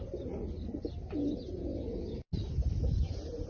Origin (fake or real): real